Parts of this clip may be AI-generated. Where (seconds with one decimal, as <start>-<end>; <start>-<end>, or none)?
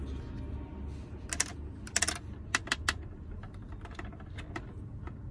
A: none